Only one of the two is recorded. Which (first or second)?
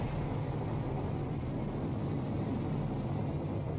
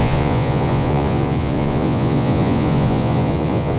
first